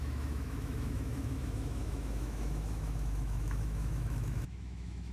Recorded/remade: remade